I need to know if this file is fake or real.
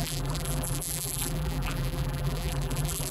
fake